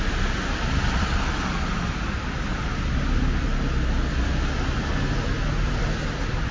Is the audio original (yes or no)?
yes